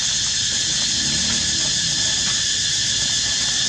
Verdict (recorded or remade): recorded